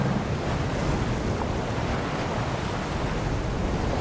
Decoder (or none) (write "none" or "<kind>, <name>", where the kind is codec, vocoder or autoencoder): none